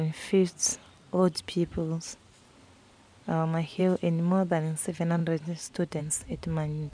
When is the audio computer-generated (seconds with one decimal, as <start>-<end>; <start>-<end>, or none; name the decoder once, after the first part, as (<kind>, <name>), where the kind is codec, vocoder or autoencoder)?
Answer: none